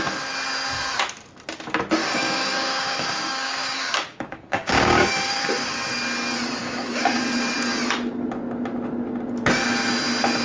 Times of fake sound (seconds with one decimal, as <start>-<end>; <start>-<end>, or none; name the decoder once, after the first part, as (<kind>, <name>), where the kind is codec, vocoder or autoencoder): 2.0-5.5 (codec, DAC); 6.6-7.2